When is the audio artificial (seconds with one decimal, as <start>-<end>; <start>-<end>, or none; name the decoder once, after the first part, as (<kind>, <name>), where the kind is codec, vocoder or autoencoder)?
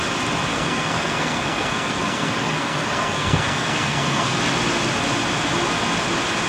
0.5-4.4 (codec, SNAC)